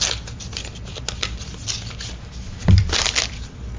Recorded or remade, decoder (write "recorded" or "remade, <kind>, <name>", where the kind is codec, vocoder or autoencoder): recorded